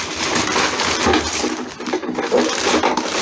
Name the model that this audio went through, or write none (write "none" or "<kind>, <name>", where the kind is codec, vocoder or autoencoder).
none